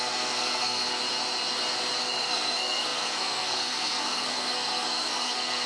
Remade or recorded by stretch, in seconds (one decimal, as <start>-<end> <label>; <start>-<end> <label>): 0.0-1.0 remade; 1.0-2.0 recorded; 2.0-5.7 remade